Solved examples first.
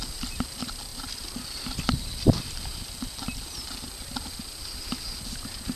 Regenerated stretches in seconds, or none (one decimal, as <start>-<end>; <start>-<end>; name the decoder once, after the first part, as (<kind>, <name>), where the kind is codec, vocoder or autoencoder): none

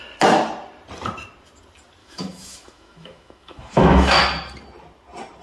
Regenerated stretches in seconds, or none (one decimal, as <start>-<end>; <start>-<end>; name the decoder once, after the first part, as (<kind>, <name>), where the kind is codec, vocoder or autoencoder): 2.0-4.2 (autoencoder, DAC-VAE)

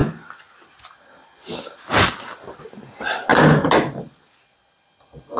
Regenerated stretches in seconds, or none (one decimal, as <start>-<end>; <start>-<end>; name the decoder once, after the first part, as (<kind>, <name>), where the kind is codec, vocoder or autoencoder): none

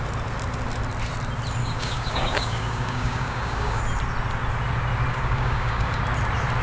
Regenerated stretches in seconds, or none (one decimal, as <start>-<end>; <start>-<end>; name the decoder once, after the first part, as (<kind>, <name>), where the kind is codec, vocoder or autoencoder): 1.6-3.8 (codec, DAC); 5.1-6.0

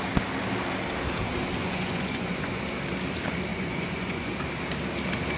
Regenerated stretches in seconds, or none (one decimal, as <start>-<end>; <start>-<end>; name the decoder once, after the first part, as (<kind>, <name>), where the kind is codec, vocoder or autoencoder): 1.6-2.6 (vocoder, Vocos); 3.5-4.3

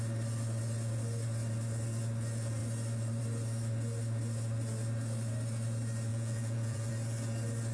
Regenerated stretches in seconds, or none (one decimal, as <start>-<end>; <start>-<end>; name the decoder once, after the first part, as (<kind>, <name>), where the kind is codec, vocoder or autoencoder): 6.1-6.9 (vocoder, Vocos)

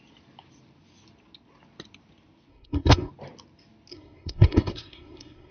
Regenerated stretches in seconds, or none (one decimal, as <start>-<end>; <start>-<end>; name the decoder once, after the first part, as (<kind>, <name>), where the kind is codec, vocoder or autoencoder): 2.5-3.1 (codec, SNAC); 3.9-5.5

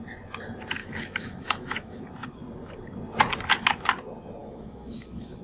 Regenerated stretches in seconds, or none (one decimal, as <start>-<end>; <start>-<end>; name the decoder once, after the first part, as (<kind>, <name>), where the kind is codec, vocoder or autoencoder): 0.8-2.0 (autoencoder, DAC-VAE); 4.4-5.4